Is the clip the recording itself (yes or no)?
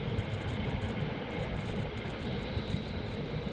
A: no